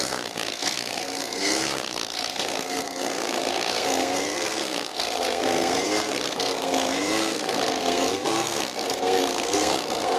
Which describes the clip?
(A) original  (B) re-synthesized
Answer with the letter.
B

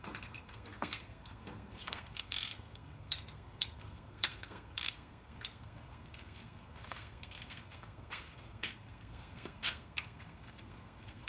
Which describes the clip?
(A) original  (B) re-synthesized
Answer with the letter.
B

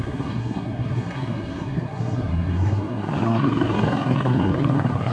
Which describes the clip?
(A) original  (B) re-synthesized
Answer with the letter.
B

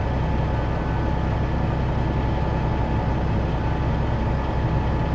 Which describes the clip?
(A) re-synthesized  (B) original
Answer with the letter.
B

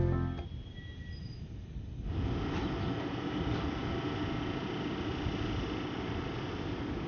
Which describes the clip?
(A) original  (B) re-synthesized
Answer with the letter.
A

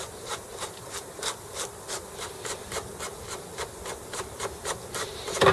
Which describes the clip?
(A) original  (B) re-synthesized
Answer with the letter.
A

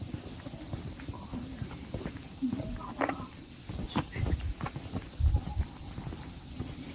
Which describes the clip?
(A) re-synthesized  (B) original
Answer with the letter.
B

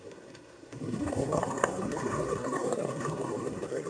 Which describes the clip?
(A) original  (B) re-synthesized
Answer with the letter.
B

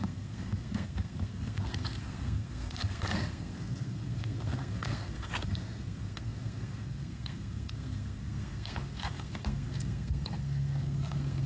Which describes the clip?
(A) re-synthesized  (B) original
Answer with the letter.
A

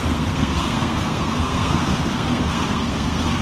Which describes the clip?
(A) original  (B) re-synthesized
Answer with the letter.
B